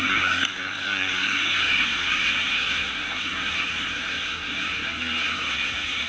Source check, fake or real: fake